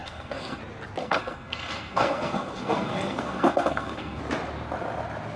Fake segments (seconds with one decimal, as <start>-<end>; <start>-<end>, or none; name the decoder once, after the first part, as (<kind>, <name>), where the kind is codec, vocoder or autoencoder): 0.0-0.6 (codec, SNAC); 1.0-4.2